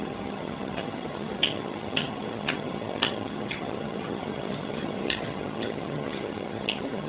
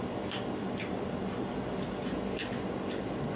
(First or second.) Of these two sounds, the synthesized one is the first